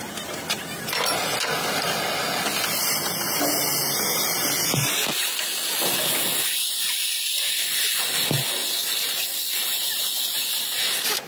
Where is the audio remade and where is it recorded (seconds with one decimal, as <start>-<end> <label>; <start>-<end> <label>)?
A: 0.0-11.3 recorded